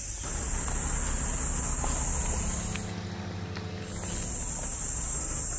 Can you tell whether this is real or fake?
real